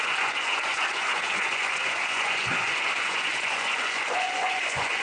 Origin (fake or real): fake